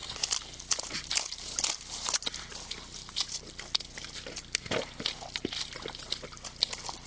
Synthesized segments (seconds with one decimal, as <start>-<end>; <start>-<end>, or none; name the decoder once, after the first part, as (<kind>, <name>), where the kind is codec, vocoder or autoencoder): none